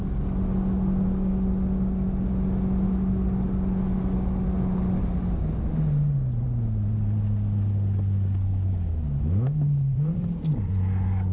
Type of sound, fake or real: real